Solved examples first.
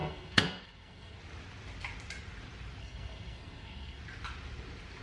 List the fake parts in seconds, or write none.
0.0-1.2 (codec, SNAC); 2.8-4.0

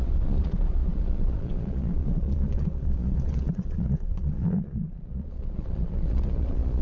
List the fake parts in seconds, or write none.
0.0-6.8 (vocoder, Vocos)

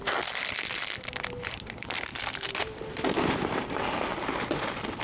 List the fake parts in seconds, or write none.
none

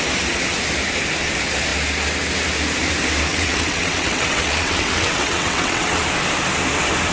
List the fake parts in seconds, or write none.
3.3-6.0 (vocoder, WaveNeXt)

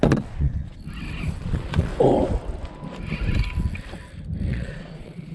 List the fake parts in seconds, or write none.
0.0-0.8 (vocoder, Vocos); 1.4-1.9; 4.5-5.3

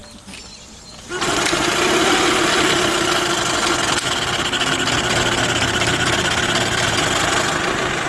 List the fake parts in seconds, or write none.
none

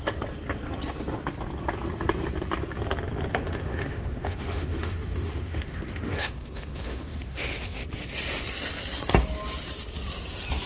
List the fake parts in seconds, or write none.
3.3-7.8 (autoencoder, DAC-VAE)